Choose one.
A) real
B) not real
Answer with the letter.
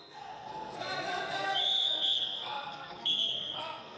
B